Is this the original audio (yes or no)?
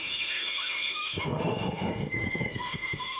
no